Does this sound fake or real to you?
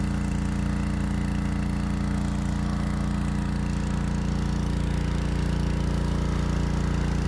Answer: real